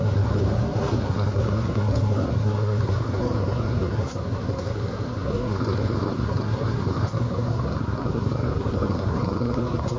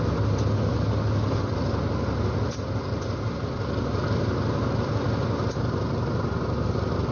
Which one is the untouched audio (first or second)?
second